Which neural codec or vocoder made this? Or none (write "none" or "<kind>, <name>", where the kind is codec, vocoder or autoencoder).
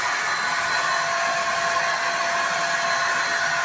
none